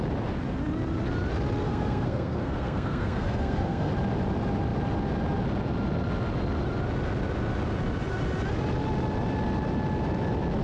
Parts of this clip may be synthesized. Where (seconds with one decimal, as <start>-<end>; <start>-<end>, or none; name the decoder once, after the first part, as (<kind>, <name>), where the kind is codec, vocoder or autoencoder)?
1.6-3.9 (codec, SNAC)